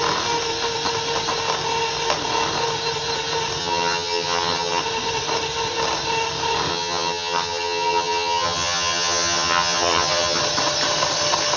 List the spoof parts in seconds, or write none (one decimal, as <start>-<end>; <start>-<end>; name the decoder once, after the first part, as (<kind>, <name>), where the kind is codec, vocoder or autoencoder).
3.6-4.8 (vocoder, HiFi-GAN); 6.7-10.4